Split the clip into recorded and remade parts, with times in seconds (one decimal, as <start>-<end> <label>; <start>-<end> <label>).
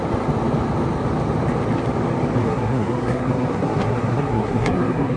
0.0-2.4 recorded; 2.4-5.2 remade